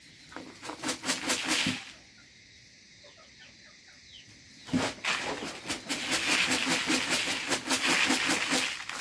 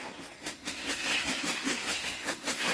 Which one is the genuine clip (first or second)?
first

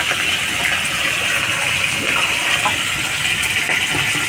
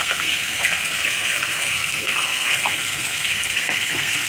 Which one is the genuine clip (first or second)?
first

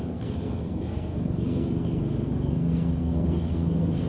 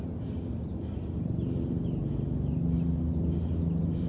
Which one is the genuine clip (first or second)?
second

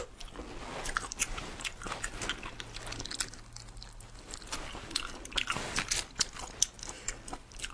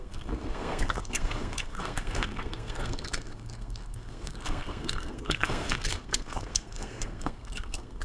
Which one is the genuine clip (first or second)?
first